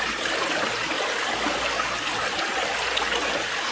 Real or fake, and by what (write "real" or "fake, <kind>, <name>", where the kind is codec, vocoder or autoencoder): real